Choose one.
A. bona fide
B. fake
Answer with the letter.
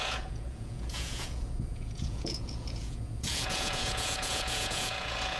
B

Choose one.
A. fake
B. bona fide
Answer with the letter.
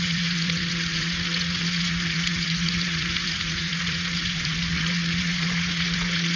A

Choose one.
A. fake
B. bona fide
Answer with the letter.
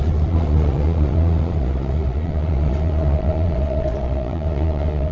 A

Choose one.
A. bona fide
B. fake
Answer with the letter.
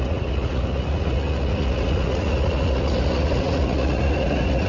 B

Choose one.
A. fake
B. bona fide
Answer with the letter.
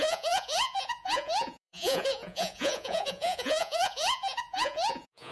A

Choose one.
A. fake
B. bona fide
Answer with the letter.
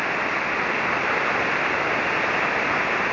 B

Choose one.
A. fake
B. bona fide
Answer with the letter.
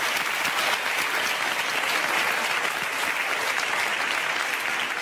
B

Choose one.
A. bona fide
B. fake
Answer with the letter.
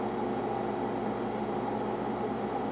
A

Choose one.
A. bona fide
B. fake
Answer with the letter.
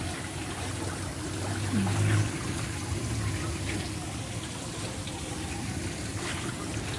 A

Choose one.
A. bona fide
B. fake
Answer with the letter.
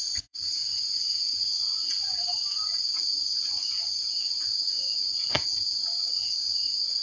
B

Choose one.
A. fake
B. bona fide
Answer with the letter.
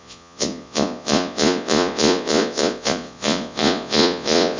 A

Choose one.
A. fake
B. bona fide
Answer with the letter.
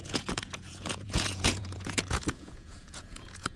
A